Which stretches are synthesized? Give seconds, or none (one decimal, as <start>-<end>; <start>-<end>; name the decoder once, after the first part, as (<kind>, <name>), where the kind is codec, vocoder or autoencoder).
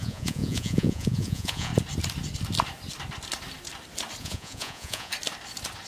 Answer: 0.0-1.7 (vocoder, Vocos); 4.2-5.1